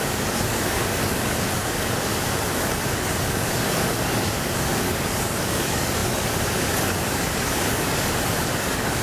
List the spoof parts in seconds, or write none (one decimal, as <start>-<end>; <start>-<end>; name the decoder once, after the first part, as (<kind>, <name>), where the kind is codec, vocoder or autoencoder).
0.0-9.0 (codec, DAC)